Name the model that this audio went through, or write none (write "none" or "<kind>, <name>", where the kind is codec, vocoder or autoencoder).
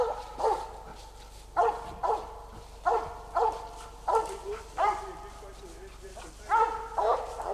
none